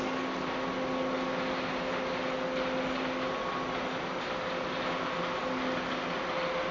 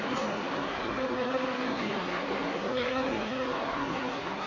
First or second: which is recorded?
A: first